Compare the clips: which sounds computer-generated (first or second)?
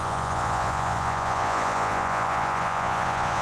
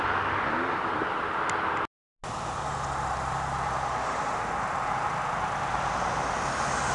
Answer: first